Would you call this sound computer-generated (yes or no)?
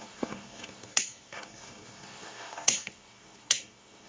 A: yes